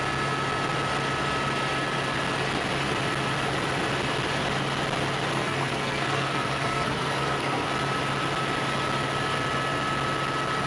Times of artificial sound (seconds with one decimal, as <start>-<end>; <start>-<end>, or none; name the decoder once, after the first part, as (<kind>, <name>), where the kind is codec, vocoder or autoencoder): 5.3-7.7 (codec, SNAC)